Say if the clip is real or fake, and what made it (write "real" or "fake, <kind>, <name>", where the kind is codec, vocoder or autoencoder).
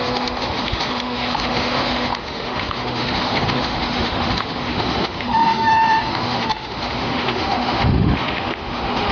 fake, autoencoder, DAC-VAE